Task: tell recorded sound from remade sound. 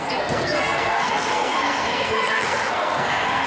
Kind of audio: remade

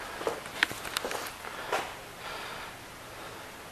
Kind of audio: recorded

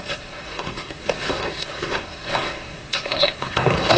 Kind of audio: remade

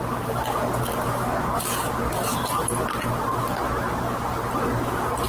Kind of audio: recorded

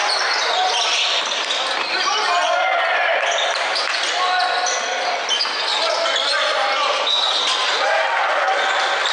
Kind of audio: recorded